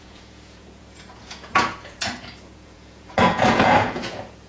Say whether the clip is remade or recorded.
remade